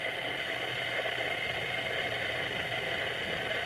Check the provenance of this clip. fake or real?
real